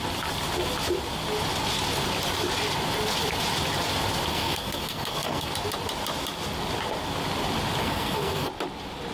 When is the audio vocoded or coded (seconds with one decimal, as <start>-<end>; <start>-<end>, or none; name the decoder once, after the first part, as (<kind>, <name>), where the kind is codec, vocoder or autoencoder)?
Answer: 4.3-5.5 (codec, SNAC); 7.8-8.5